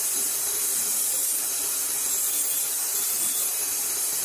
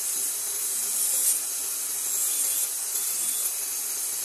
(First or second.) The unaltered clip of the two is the second